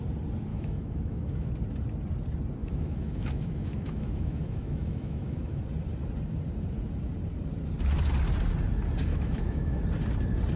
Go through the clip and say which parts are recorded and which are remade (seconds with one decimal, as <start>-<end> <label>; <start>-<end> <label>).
0.0-0.5 recorded; 0.5-1.5 remade; 1.5-2.6 recorded; 2.6-5.6 remade; 5.6-9.1 recorded; 9.1-9.8 remade; 9.8-10.6 recorded